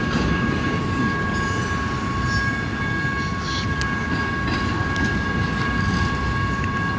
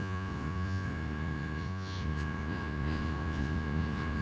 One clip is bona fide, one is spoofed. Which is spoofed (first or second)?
second